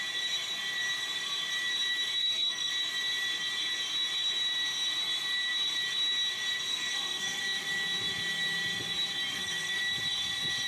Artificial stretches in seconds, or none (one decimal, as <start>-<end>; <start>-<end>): 2.2-2.7; 6.7-7.4; 9.3-9.8